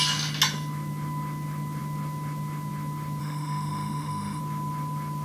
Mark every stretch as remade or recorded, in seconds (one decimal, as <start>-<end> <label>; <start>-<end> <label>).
0.0-3.2 recorded; 3.2-4.4 remade; 4.4-5.2 recorded